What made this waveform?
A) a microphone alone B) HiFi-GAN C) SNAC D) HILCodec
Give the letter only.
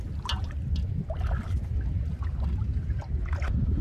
A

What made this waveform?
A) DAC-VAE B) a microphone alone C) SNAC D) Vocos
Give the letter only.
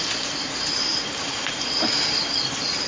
B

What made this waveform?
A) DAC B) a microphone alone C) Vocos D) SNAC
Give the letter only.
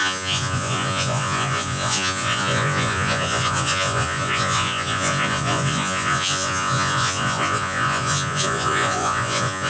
C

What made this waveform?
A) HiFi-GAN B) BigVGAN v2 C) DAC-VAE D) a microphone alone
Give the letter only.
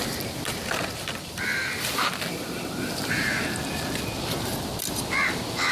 D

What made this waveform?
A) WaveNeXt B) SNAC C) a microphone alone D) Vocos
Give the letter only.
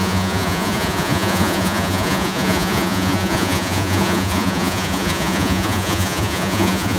D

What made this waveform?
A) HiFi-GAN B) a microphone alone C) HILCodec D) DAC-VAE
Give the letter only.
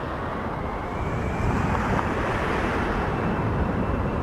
B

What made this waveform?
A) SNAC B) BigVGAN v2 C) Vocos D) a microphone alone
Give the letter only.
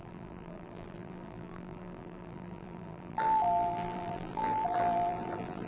B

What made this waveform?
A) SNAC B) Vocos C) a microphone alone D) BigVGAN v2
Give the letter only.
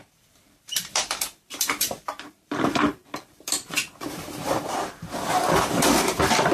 D